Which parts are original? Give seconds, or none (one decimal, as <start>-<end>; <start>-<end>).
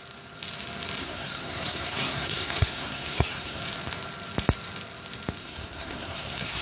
0.0-1.0; 3.6-5.4